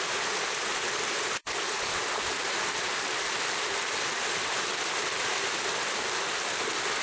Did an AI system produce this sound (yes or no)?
no